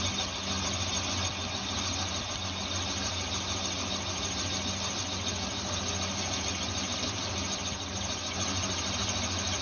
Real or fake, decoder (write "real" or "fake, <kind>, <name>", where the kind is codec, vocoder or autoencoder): real